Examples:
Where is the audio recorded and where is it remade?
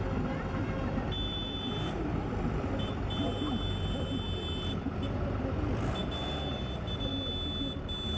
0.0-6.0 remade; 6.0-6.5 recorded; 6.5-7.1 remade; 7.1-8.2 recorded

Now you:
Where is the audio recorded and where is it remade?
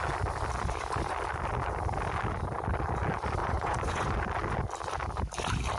0.0-3.4 recorded; 3.4-4.1 remade; 4.1-5.8 recorded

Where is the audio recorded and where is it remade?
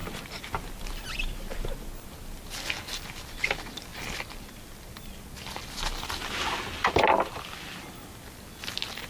0.0-9.1 recorded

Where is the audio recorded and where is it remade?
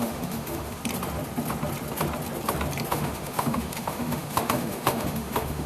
0.0-0.8 remade; 0.8-2.9 recorded; 2.9-5.7 remade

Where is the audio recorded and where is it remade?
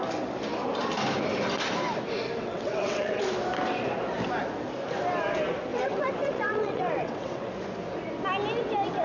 0.0-2.4 recorded; 2.4-3.2 remade; 3.2-5.7 recorded; 5.7-7.5 remade; 7.5-9.0 recorded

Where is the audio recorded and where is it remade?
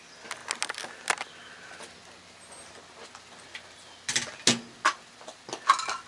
0.0-6.1 recorded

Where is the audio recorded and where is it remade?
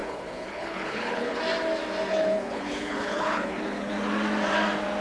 0.0-1.4 remade; 1.4-2.1 recorded; 2.1-3.9 remade; 3.9-5.0 recorded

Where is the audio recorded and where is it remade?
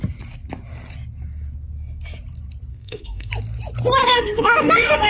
0.0-2.7 recorded; 2.7-3.3 remade; 3.3-4.0 recorded; 4.0-5.1 remade